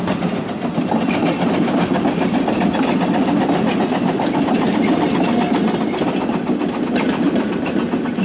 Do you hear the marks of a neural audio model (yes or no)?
no